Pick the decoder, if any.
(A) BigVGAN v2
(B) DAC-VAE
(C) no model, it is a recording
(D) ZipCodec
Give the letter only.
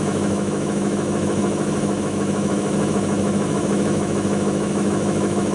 B